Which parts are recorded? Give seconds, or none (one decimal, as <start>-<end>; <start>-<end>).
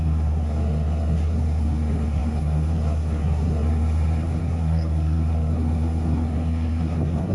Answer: none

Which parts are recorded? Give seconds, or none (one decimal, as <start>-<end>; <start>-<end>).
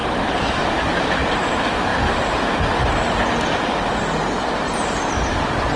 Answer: 0.0-5.8